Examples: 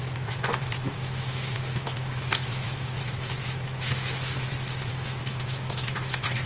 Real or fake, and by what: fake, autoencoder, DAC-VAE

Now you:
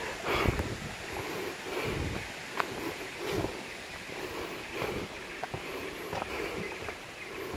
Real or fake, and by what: real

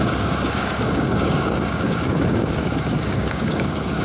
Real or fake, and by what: fake, codec, DAC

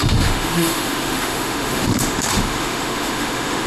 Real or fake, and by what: fake, autoencoder, DAC-VAE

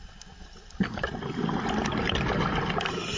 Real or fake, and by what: real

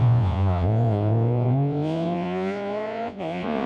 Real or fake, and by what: fake, vocoder, Vocos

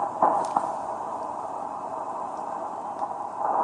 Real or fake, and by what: fake, vocoder, BigVGAN v2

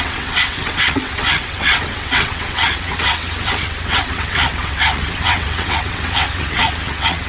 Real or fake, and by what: fake, vocoder, WaveNeXt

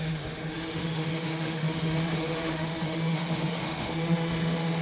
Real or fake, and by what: fake, autoencoder, DAC-VAE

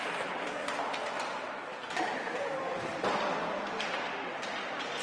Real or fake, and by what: real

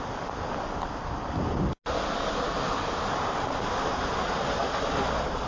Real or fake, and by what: real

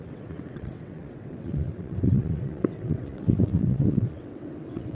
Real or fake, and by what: fake, vocoder, WaveNeXt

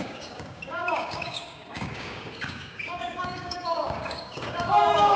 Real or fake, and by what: fake, codec, DAC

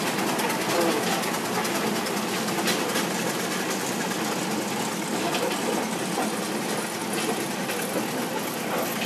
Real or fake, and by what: real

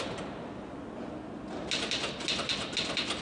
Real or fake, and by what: real